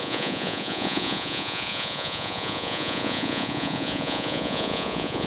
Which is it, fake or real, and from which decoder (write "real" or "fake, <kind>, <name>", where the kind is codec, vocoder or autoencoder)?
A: fake, vocoder, Vocos